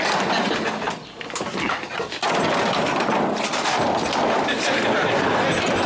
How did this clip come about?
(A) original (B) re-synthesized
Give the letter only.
A